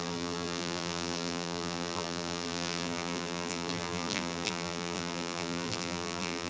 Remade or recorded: remade